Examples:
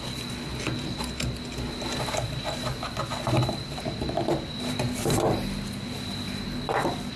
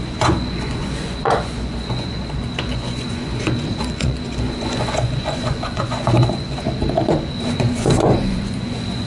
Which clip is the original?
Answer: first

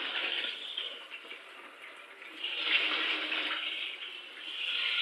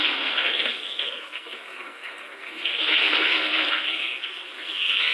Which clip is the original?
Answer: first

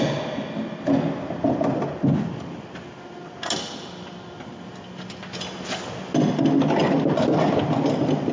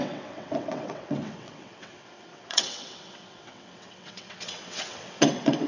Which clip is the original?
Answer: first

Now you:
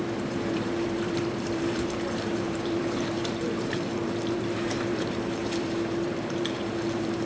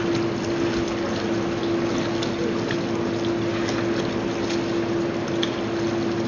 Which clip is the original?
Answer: second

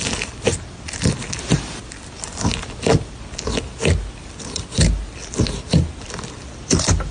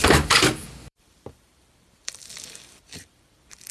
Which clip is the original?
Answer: first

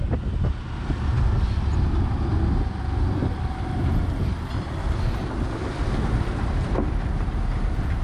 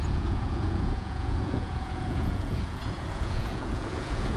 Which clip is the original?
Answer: first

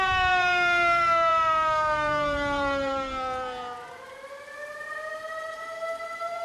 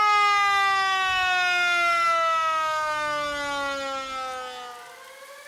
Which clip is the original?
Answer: second